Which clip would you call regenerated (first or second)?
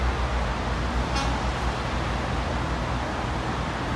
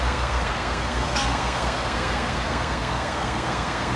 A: second